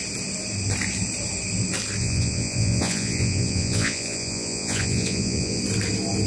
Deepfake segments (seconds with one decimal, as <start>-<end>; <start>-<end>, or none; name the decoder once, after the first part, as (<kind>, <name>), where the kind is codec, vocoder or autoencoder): 2.0-5.6 (vocoder, Vocos)